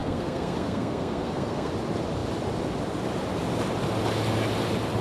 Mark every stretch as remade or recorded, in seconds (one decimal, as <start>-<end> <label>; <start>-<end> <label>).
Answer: 0.0-1.7 remade; 1.7-5.0 recorded